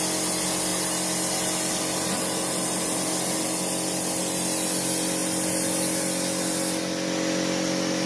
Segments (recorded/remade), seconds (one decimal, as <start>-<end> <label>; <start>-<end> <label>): 0.0-8.1 recorded